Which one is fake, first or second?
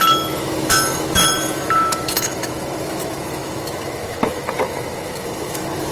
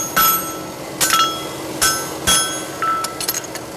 first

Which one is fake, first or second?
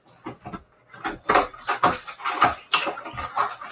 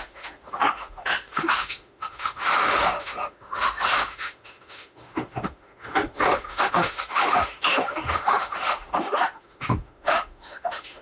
second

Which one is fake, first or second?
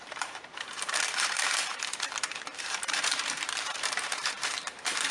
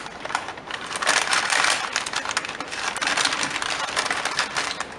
first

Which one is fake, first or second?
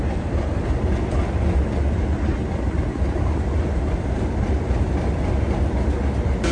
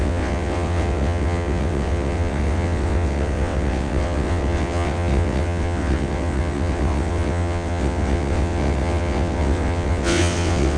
second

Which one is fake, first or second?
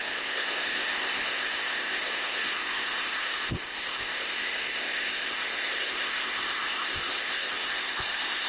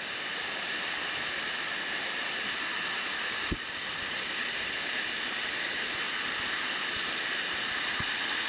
first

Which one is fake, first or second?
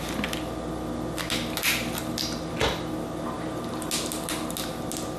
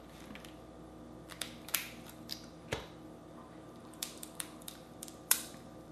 second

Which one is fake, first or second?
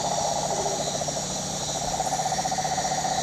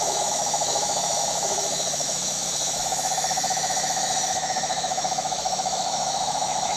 second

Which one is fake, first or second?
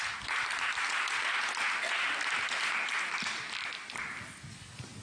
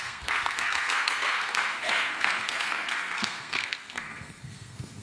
second